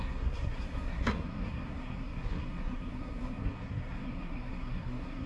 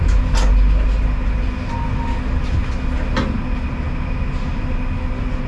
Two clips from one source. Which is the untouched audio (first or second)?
second